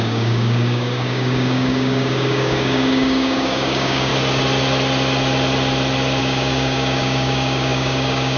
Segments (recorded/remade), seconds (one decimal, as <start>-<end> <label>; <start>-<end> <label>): 0.0-4.1 remade; 4.1-6.2 recorded; 6.2-8.4 remade